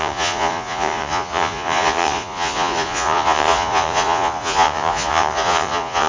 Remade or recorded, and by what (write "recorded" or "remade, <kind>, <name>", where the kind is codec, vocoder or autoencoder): remade, vocoder, Vocos